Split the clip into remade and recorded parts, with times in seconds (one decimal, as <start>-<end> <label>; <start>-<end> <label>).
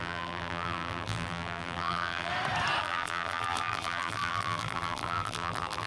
0.0-2.3 remade; 2.3-2.8 recorded; 2.8-5.9 remade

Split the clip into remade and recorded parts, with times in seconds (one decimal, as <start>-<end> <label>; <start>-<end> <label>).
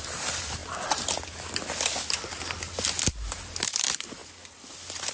0.0-0.6 remade; 0.6-3.1 recorded; 3.1-4.2 remade; 4.2-5.1 recorded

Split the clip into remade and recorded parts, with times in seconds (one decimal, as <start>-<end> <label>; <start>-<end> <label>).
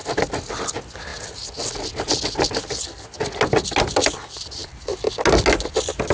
0.0-6.1 recorded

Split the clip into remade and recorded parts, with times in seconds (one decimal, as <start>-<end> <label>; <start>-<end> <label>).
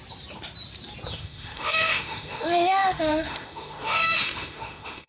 0.0-1.1 recorded; 1.1-5.1 remade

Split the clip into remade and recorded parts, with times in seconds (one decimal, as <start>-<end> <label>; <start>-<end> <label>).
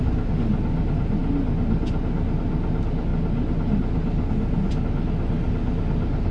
0.0-6.3 recorded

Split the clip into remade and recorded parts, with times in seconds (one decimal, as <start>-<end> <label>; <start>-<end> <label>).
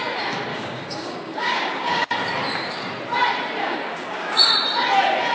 0.0-0.5 recorded; 0.5-2.1 remade; 2.1-3.6 recorded; 3.6-4.5 remade; 4.5-5.3 recorded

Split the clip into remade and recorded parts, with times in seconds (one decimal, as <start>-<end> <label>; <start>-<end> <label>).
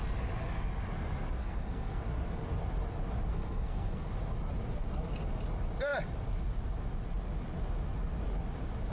0.0-1.4 recorded; 1.4-2.0 remade; 2.0-3.3 recorded; 3.3-4.1 remade; 4.1-8.9 recorded